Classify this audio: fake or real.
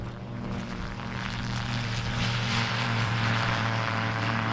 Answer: fake